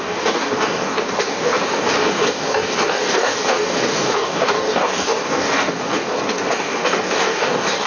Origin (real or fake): fake